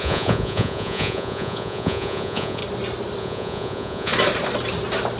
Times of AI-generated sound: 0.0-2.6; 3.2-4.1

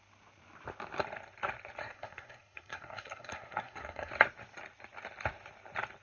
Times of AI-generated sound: 1.8-4.1

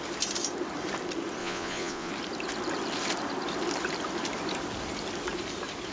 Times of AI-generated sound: 1.4-2.1

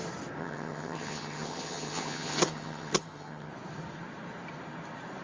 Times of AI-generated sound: 0.4-3.5

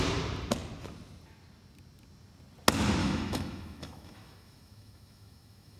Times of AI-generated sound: 3.0-5.8

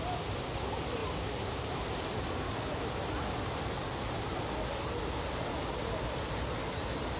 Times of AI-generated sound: none